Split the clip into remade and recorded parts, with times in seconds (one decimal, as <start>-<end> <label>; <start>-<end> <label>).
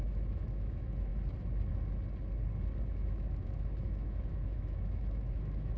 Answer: 0.0-1.1 remade; 1.1-2.9 recorded; 2.9-5.8 remade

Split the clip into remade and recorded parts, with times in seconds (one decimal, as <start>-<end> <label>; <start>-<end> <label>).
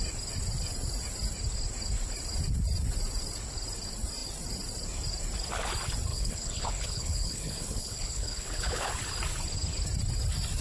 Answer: 0.0-6.1 recorded; 6.1-8.9 remade; 8.9-10.6 recorded